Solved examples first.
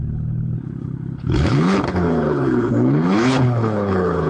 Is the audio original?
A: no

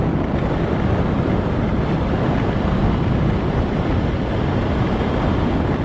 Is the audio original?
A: yes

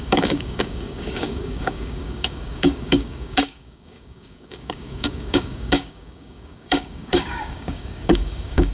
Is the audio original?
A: no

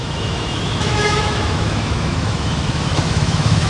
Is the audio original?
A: no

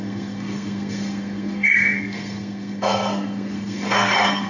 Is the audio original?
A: no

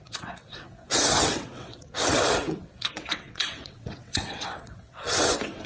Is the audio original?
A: no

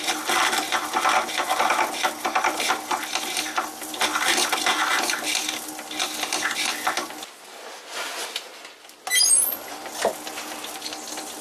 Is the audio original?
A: yes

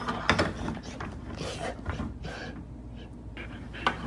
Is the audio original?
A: yes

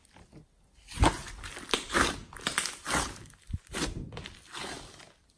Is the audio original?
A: yes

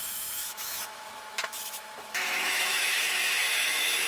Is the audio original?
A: no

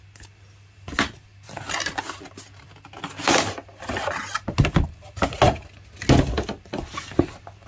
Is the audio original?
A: yes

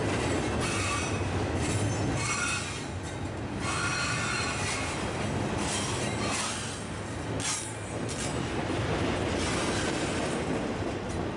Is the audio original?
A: yes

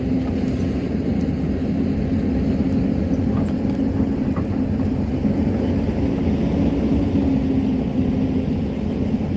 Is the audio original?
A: yes